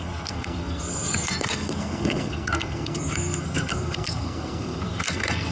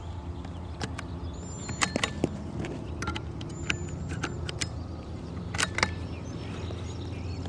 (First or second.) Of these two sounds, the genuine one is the second